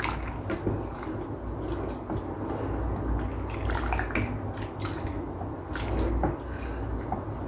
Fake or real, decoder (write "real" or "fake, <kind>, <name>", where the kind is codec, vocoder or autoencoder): real